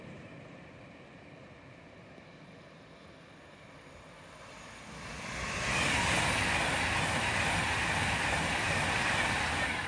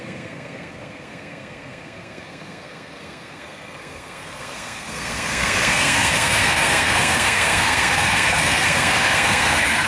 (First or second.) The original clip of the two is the first